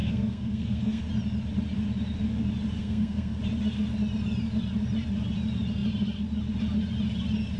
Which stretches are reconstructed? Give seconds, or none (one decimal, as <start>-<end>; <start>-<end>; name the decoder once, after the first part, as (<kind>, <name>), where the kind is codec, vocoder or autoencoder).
0.0-1.0 (codec, SNAC); 2.8-3.4